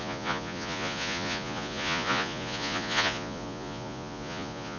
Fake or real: fake